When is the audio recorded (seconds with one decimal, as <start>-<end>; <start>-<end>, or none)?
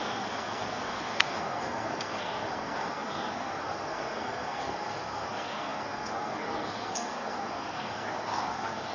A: none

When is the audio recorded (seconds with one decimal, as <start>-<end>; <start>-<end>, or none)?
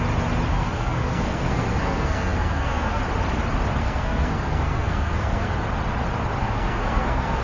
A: 0.0-0.5; 3.0-3.8; 5.5-6.4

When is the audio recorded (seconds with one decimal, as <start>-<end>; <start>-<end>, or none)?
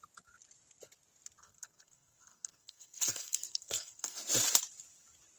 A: 0.0-1.4; 4.2-5.4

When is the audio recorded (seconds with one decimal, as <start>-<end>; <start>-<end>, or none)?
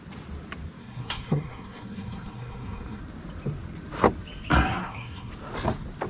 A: 0.0-0.8; 3.0-4.8; 5.3-6.1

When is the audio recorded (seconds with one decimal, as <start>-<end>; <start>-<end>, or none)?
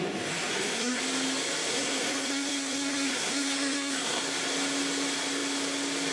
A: 0.0-0.5; 1.0-1.7; 4.2-6.1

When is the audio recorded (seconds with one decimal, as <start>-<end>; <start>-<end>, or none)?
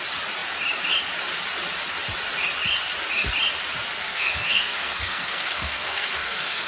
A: 0.0-4.0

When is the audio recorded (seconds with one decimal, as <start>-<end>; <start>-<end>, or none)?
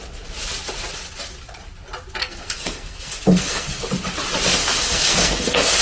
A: 0.0-2.2; 3.9-4.6